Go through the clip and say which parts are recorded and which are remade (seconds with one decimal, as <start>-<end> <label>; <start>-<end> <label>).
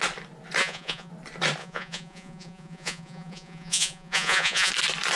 0.0-0.6 recorded; 0.6-1.1 remade; 1.1-1.6 recorded; 1.6-4.7 remade; 4.7-5.2 recorded